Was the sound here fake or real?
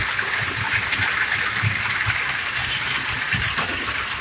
real